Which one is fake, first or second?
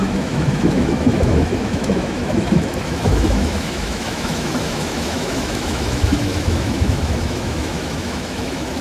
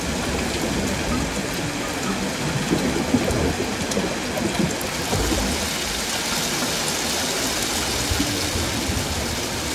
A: first